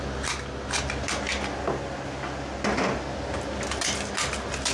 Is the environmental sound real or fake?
real